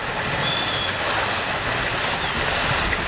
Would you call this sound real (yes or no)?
yes